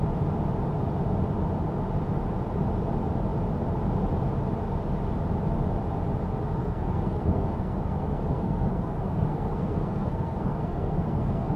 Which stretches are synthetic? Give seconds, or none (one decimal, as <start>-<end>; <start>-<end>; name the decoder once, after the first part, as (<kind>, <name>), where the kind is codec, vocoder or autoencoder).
6.6-11.6 (codec, SNAC)